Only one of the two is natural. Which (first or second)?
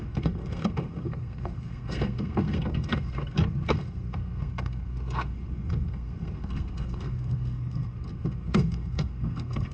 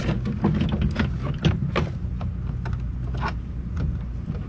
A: second